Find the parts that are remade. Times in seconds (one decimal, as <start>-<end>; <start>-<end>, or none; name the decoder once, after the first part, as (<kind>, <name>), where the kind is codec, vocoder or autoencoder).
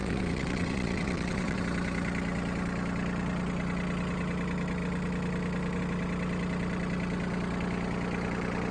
0.0-1.6 (vocoder, WaveNeXt)